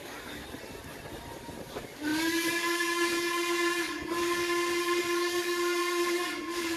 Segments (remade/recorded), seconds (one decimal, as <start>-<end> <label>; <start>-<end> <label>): 0.0-0.4 remade; 0.4-1.6 recorded; 1.6-6.8 remade